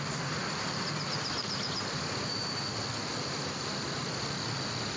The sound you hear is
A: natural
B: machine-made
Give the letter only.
A